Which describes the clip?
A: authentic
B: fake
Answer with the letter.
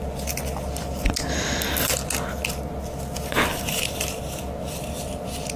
A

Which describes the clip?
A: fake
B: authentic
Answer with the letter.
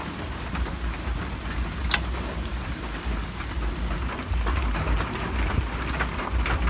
B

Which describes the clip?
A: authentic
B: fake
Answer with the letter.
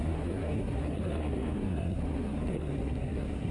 B